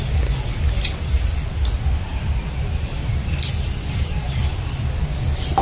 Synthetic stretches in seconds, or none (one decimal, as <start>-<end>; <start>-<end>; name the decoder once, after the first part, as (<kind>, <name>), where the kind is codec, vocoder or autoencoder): none